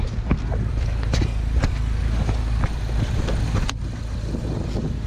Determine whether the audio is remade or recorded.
recorded